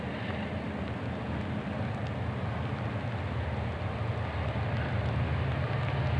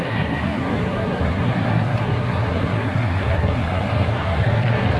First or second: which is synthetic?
second